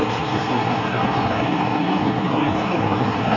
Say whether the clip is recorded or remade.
remade